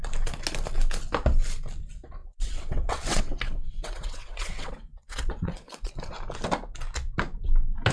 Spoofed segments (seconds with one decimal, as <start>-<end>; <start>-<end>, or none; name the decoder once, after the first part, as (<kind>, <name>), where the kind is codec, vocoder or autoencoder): 2.2-5.9 (vocoder, WaveNeXt)